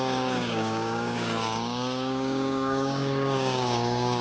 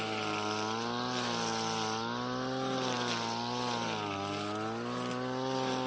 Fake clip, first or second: first